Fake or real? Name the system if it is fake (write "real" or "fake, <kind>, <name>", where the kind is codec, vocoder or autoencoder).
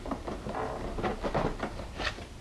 real